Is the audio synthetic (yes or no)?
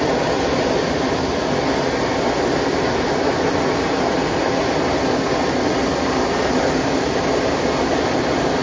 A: no